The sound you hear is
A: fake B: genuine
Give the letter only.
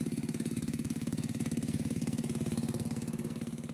A